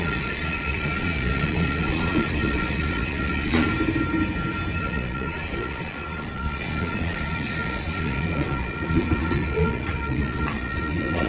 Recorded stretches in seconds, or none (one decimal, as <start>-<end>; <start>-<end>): 3.7-4.8